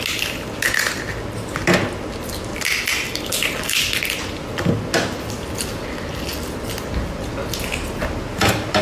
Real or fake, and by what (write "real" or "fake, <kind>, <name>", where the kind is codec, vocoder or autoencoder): real